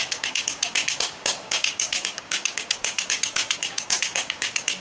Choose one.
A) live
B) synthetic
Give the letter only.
B